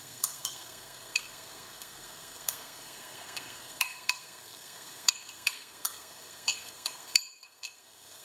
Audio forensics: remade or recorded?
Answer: remade